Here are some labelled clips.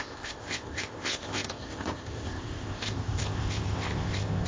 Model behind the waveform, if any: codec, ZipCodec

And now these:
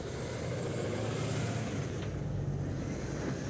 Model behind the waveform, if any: none